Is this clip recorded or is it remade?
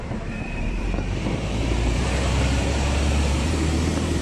remade